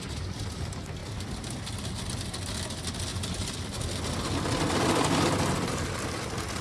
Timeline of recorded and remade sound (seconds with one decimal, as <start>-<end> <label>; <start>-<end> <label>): 0.0-6.6 recorded